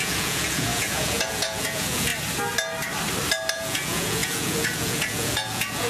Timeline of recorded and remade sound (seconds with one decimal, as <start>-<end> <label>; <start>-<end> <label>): 0.0-2.1 remade; 2.1-3.5 recorded; 3.5-5.9 remade